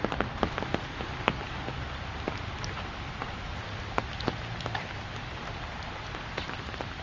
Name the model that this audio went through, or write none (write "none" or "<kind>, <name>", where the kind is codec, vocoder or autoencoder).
none